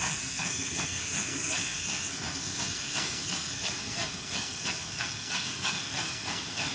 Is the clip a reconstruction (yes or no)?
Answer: yes